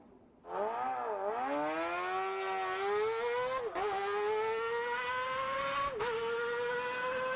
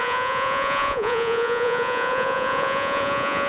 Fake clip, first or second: second